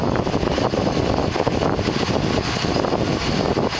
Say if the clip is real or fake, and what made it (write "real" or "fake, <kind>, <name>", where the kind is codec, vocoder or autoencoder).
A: real